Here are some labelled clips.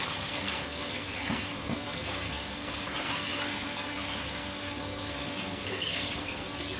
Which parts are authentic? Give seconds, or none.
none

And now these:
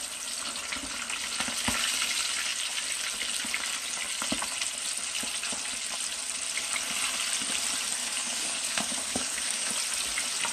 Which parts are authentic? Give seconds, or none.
0.0-8.0; 9.7-10.5

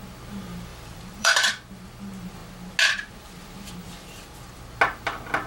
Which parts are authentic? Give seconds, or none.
0.0-0.7; 1.5-5.5

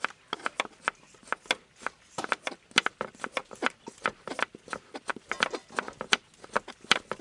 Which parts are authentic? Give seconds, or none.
0.0-7.2